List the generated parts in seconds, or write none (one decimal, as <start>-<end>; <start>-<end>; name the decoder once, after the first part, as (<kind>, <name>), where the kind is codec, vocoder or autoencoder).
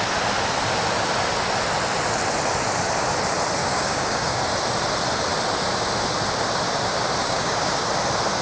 3.6-4.4 (codec, DAC); 7.2-7.9